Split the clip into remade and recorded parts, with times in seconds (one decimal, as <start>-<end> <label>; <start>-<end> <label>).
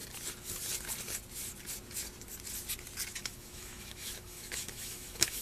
0.0-3.2 recorded; 3.2-5.4 remade